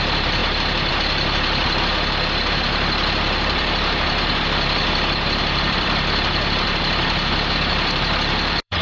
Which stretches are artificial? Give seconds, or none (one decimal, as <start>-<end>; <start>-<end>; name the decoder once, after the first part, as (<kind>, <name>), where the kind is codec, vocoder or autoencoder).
0.0-8.8 (vocoder, BigVGAN v2)